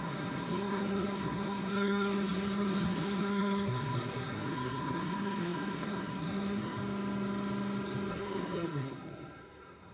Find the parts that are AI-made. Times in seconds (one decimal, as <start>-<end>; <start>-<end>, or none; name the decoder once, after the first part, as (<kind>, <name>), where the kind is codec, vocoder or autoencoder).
0.0-6.8 (codec, SNAC); 8.1-9.9